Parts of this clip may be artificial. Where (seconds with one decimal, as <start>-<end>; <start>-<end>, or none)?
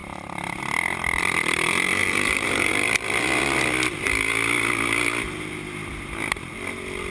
2.0-2.7